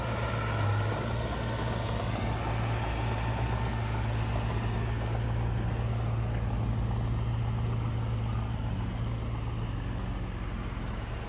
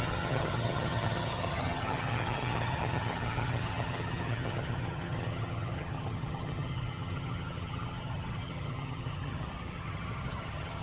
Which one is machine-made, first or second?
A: second